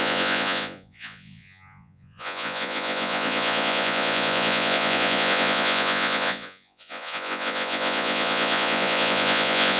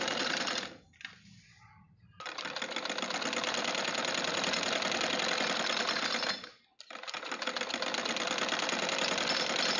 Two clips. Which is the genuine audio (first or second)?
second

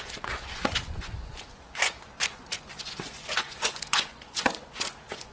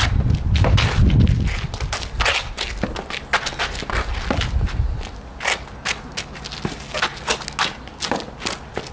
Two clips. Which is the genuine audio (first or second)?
second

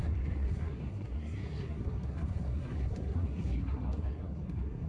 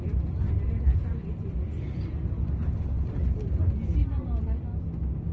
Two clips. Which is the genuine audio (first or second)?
second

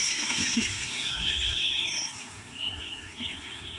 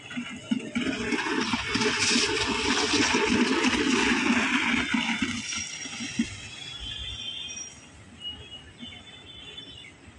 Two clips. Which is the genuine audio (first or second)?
second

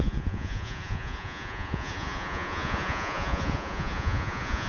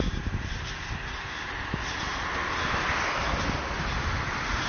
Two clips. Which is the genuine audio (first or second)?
second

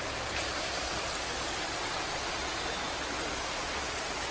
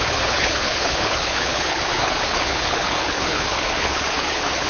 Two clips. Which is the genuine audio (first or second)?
first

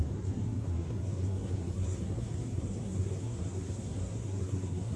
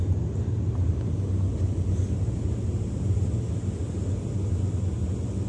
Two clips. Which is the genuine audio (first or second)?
second